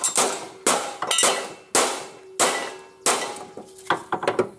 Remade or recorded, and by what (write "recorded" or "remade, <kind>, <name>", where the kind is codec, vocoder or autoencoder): recorded